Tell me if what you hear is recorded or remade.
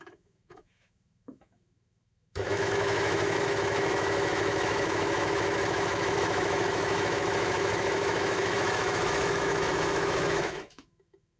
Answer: remade